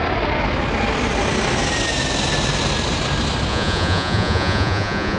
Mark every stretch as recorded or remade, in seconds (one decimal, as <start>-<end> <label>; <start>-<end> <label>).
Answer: 0.0-3.5 recorded; 3.5-5.2 remade